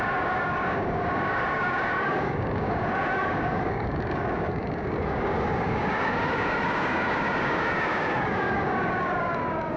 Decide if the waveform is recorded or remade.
remade